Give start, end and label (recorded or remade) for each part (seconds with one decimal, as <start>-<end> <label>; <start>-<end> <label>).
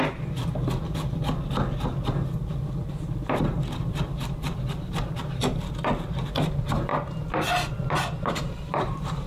0.0-0.4 remade; 0.4-4.7 recorded; 4.7-5.4 remade; 5.4-6.1 recorded; 6.1-6.9 remade; 6.9-8.3 recorded; 8.3-9.3 remade